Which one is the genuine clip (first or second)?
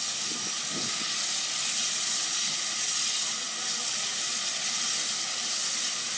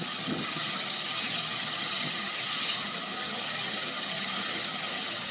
first